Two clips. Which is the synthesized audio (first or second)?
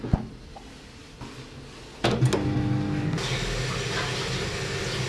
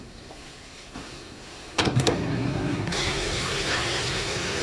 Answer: second